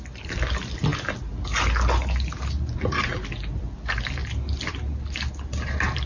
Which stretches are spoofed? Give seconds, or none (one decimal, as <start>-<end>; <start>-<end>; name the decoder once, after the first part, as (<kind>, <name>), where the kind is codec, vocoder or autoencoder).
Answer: none